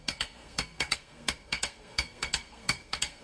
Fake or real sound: fake